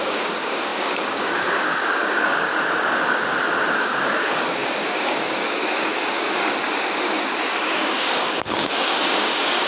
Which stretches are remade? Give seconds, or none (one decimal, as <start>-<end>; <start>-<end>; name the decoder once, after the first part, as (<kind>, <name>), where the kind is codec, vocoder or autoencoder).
0.0-2.5 (codec, DAC); 3.7-9.7